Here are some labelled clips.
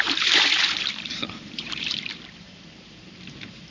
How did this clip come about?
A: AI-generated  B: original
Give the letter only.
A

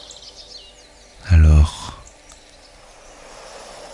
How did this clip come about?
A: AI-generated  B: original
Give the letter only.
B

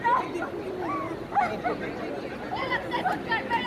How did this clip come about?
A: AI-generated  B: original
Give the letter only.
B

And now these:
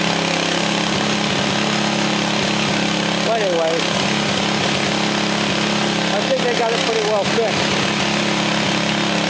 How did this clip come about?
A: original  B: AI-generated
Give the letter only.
A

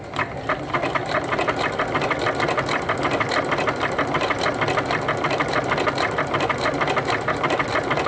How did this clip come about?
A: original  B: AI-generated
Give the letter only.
A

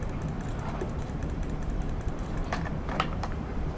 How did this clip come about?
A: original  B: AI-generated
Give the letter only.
B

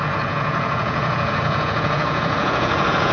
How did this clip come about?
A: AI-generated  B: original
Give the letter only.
A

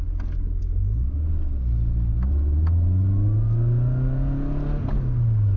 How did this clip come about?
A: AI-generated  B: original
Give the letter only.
B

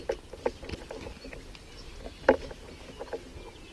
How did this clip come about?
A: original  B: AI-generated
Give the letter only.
A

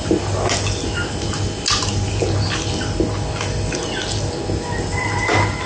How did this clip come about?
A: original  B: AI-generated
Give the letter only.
A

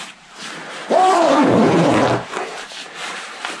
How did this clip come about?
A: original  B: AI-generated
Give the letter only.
B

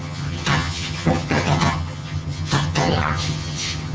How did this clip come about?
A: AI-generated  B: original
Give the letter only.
A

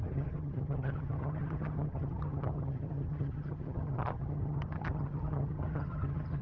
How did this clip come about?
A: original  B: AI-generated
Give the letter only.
B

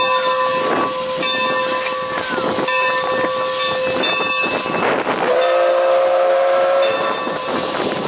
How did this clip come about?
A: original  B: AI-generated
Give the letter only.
A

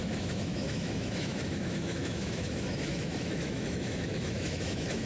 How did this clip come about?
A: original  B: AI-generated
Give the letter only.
B